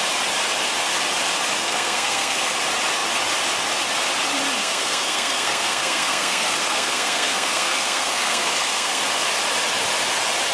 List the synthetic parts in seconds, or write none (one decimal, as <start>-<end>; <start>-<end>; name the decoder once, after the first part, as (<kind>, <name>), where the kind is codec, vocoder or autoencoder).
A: 1.6-2.6 (codec, SNAC); 4.6-9.0